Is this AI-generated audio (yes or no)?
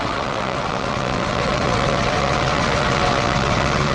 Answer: yes